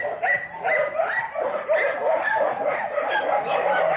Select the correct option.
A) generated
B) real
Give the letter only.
B